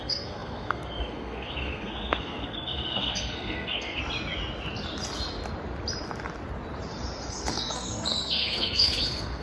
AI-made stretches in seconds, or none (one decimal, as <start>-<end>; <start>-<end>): 0.0-4.0; 7.3-9.4